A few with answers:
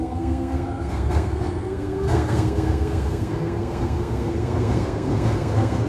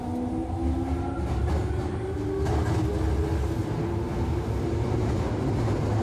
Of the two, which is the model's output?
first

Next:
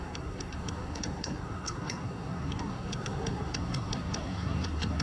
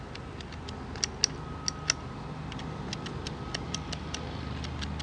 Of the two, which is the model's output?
first